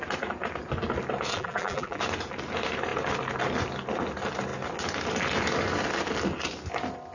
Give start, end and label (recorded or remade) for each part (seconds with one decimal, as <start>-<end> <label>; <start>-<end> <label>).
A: 0.0-1.3 recorded; 1.3-2.0 remade; 2.0-7.1 recorded